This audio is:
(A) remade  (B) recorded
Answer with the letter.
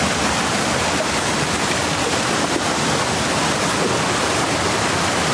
B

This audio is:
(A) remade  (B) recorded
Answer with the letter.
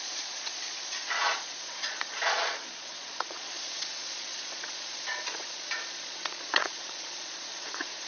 A